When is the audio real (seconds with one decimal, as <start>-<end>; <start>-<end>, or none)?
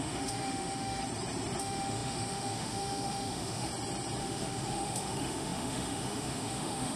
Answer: 1.0-1.6; 3.7-4.2